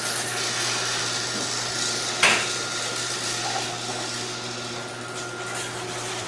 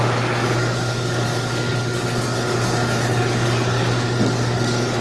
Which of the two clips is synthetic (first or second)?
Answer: second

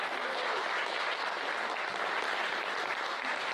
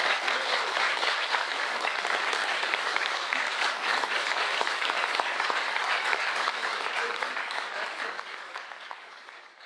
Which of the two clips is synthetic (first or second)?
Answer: second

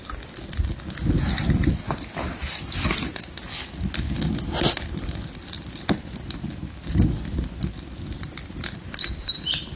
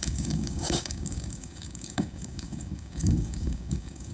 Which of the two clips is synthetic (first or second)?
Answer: second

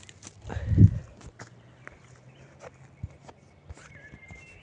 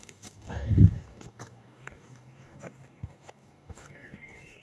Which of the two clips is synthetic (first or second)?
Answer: second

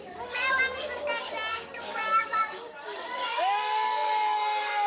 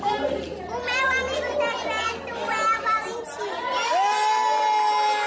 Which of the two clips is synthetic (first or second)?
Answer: first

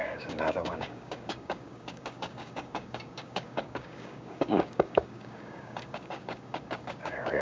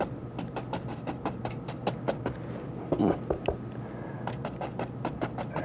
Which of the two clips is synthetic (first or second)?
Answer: first